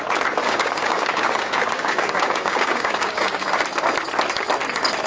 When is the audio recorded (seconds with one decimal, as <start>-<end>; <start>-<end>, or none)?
0.0-0.4; 3.5-5.1